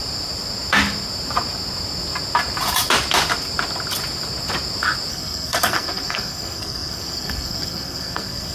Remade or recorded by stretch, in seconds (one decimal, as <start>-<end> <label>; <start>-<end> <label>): 0.0-5.1 recorded; 5.1-8.5 remade